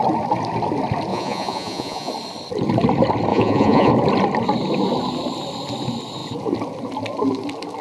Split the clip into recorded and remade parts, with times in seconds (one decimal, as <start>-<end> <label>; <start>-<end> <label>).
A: 0.0-1.1 recorded; 1.1-2.1 remade; 2.1-3.3 recorded; 3.3-3.9 remade; 3.9-7.8 recorded